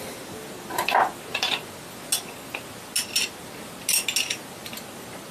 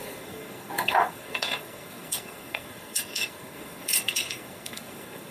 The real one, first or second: first